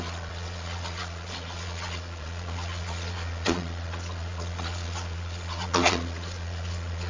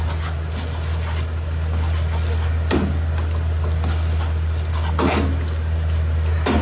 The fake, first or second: first